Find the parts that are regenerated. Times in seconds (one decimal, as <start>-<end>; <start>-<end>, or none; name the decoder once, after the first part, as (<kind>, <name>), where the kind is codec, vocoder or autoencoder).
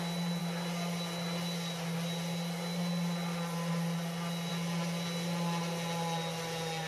none